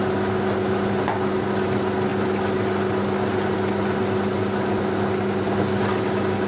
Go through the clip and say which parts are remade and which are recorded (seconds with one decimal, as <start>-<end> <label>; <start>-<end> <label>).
0.0-6.5 recorded